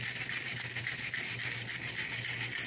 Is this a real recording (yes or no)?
yes